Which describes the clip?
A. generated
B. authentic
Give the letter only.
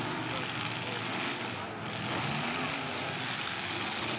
B